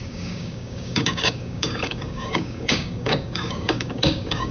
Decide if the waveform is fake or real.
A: fake